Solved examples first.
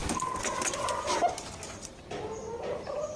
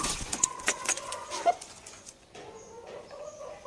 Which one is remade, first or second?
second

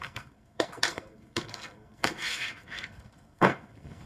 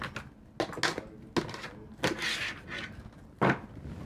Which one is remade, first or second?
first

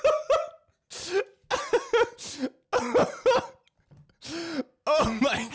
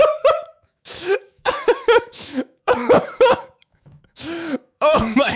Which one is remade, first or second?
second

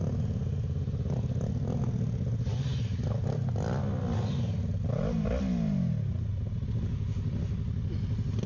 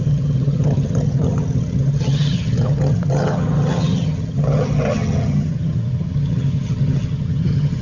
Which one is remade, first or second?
second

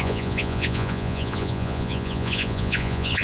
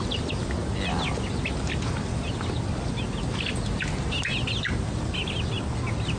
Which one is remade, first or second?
first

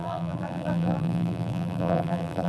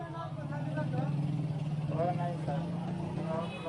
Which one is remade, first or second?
first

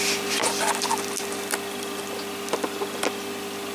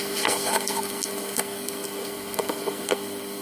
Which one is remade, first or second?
second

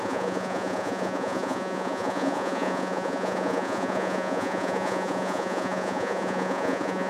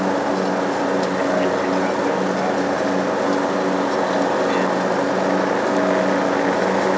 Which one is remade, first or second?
first